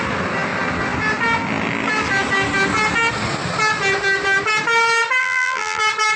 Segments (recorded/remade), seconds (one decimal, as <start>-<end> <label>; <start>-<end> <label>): 0.0-5.2 recorded; 5.2-5.8 remade; 5.8-6.2 recorded